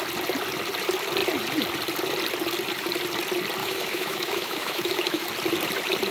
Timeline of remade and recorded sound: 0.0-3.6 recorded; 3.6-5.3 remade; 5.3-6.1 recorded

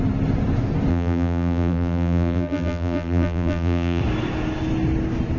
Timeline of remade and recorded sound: 0.0-0.9 recorded; 0.9-4.0 remade; 4.0-5.4 recorded

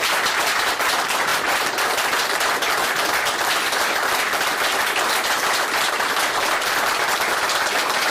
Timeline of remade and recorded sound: 0.0-1.3 recorded; 1.3-1.8 remade; 1.8-8.1 recorded

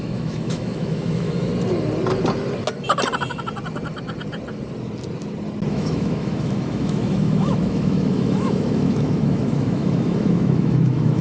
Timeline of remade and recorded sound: 0.0-1.5 remade; 1.5-5.7 recorded; 5.7-11.2 remade

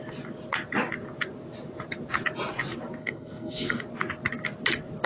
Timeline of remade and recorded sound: 0.0-3.0 recorded; 3.0-3.8 remade; 3.8-5.1 recorded